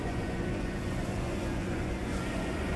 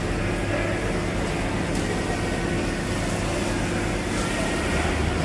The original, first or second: second